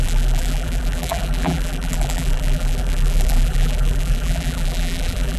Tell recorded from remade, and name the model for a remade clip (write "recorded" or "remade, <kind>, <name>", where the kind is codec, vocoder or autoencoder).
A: remade, vocoder, BigVGAN v2